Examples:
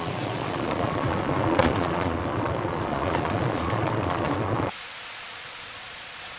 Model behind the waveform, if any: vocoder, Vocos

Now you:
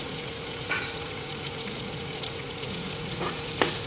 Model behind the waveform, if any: vocoder, Vocos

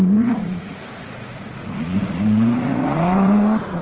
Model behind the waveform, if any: vocoder, Vocos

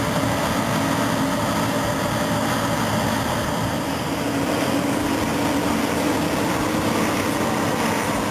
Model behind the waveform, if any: none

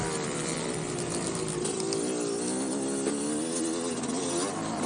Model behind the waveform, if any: none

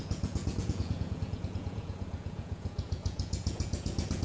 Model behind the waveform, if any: vocoder, Vocos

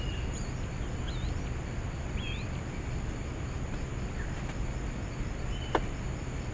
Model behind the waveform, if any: none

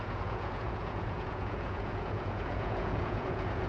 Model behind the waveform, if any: vocoder, Vocos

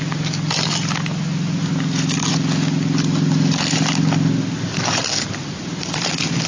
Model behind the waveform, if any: none